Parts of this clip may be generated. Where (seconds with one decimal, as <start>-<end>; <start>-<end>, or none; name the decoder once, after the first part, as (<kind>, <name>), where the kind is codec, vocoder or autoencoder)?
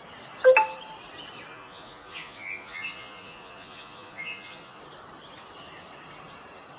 1.5-4.8 (vocoder, Vocos)